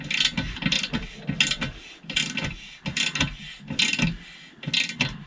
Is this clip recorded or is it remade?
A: recorded